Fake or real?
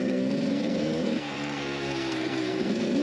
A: fake